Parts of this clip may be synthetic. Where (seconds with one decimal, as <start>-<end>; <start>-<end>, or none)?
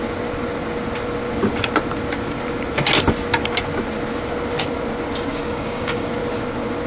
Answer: 5.3-6.1